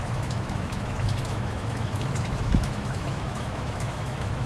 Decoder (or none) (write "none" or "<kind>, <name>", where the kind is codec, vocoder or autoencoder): autoencoder, DAC-VAE